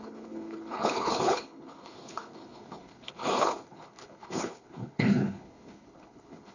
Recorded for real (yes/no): no